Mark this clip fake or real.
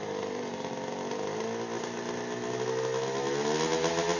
real